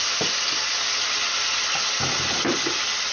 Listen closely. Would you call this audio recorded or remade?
recorded